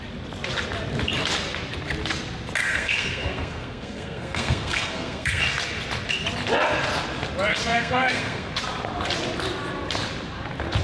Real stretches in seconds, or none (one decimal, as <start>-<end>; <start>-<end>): 0.0-2.6; 5.4-7.5; 8.5-10.8